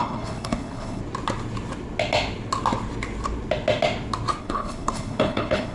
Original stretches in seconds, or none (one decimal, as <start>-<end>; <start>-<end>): 1.0-4.4